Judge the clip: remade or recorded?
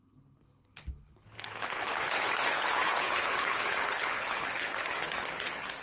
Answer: remade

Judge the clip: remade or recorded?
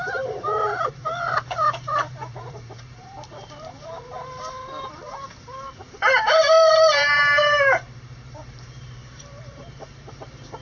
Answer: remade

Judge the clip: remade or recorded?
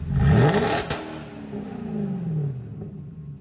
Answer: recorded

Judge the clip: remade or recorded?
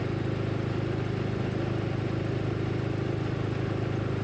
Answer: recorded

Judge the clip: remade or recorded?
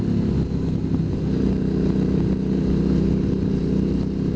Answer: recorded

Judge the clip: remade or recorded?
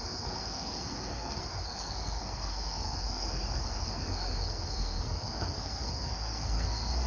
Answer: remade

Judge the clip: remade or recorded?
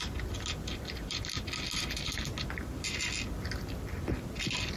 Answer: recorded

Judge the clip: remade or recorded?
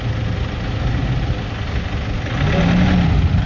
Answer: recorded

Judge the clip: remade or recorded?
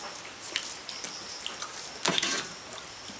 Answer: remade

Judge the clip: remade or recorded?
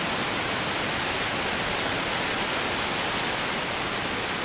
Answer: recorded